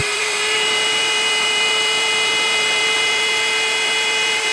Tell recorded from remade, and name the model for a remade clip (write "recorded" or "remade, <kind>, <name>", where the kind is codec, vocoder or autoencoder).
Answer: remade, vocoder, BigVGAN v2